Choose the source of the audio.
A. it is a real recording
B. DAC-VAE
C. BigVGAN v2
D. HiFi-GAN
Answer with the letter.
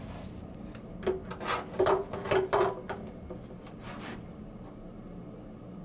A